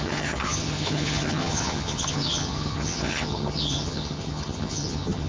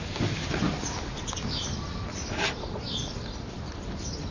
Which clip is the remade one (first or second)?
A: first